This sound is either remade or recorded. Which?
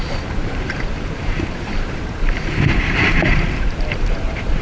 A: remade